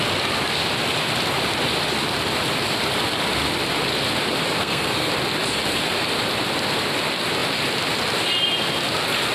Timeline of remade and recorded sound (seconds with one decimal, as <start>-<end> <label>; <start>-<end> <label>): 0.0-4.6 recorded; 4.6-5.1 remade; 5.1-9.3 recorded